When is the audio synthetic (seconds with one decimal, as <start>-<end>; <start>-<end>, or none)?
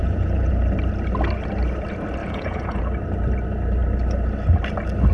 0.0-0.5; 2.2-2.8